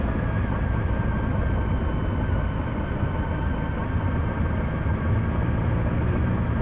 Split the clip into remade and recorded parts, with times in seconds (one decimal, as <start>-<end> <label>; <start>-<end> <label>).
0.0-6.6 recorded